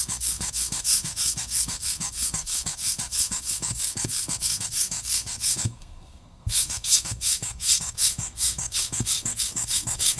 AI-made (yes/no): yes